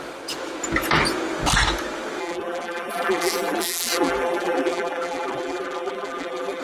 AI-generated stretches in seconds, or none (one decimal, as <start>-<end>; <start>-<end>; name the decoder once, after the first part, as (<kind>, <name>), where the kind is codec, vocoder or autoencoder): 2.2-6.6 (vocoder, BigVGAN v2)